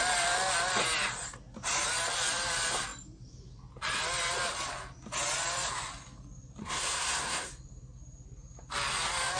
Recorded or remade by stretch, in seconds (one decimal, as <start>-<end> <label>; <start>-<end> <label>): 0.0-6.6 recorded; 6.6-7.5 remade; 7.5-9.4 recorded

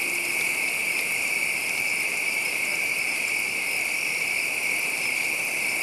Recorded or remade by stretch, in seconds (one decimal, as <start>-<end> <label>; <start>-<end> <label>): 0.0-5.8 recorded